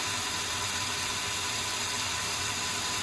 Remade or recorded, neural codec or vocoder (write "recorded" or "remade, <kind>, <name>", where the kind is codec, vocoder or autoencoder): recorded